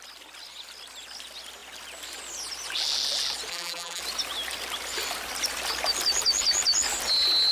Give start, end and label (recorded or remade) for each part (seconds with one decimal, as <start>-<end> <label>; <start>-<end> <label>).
0.0-3.5 recorded; 3.5-4.0 remade; 4.0-7.5 recorded

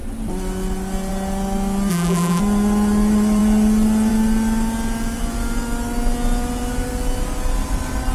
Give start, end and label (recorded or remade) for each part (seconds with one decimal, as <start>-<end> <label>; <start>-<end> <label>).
0.0-1.9 recorded; 1.9-2.4 remade; 2.4-8.1 recorded

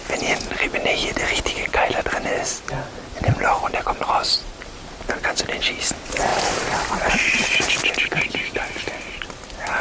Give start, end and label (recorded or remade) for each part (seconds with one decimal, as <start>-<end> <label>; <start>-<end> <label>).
0.0-6.3 recorded; 6.3-6.8 remade; 6.8-9.8 recorded

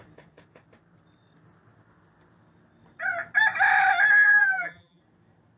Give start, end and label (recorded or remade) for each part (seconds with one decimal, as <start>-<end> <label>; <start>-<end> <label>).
0.0-4.2 recorded; 4.2-5.0 remade; 5.0-5.6 recorded

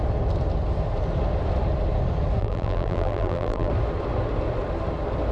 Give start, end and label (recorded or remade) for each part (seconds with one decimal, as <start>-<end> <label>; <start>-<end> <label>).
0.0-2.4 recorded; 2.4-3.7 remade; 3.7-5.3 recorded

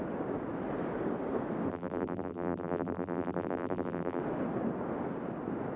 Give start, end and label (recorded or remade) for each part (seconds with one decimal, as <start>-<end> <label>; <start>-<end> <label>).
0.0-1.7 recorded; 1.7-4.2 remade; 4.2-5.8 recorded

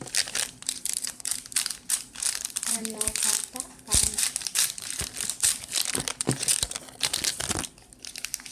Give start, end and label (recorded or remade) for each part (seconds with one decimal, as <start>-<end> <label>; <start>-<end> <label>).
0.0-0.6 recorded; 0.6-3.5 remade; 3.5-4.0 recorded; 4.0-5.0 remade; 5.0-8.5 recorded

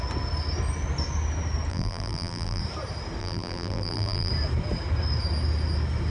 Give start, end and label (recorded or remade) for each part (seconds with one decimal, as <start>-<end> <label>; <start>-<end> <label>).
0.0-1.7 recorded; 1.7-2.6 remade; 2.6-3.2 recorded; 3.2-4.3 remade; 4.3-6.1 recorded